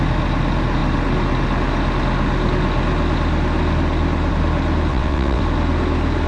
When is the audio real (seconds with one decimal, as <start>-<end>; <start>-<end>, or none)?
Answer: 0.0-4.9; 5.4-6.3